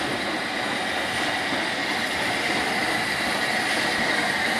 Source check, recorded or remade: recorded